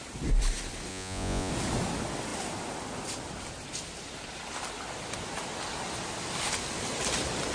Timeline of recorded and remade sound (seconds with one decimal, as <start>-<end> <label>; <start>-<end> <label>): 0.0-0.9 recorded; 0.9-1.5 remade; 1.5-7.5 recorded

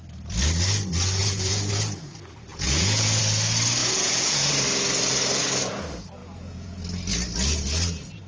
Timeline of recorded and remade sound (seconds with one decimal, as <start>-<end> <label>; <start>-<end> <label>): 0.0-1.2 recorded; 1.2-1.7 remade; 1.7-2.5 recorded; 2.5-3.2 remade; 3.2-3.8 recorded; 3.8-4.5 remade; 4.5-6.2 recorded; 6.2-6.8 remade; 6.8-8.3 recorded

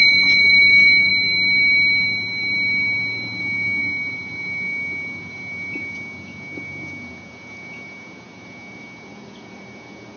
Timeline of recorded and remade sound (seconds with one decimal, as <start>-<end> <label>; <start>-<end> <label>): 0.0-1.1 remade; 1.1-3.4 recorded; 3.4-10.2 remade

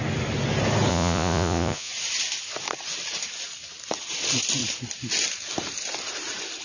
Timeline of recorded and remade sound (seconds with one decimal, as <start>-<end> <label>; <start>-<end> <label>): 0.0-0.9 recorded; 0.9-1.9 remade; 1.9-6.6 recorded

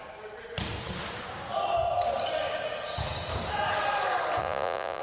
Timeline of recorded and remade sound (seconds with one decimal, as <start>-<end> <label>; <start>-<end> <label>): 0.0-4.4 recorded; 4.4-5.0 remade

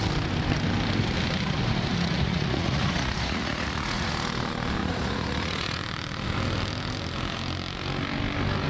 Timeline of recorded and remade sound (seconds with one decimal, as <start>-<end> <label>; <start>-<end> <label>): 0.0-1.9 recorded; 1.9-4.1 remade; 4.1-4.8 recorded; 4.8-5.8 remade; 5.8-8.7 recorded

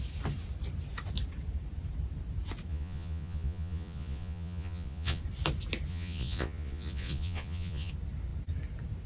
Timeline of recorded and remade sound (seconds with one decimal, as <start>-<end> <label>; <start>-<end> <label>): 0.0-2.7 recorded; 2.7-5.2 remade; 5.2-5.9 recorded; 5.9-7.9 remade; 7.9-9.1 recorded

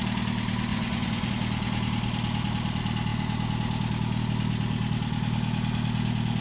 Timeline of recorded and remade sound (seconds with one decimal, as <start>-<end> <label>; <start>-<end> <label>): 0.0-0.7 recorded; 0.7-1.3 remade; 1.3-6.4 recorded